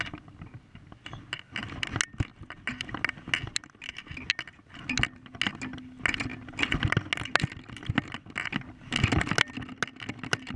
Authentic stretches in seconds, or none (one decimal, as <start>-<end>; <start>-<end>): 0.0-10.6